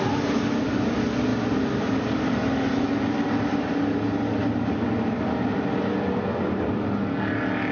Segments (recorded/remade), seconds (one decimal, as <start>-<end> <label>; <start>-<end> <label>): 0.0-7.7 recorded